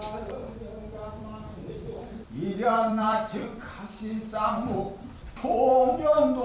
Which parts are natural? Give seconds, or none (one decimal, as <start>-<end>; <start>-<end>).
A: 0.4-1.1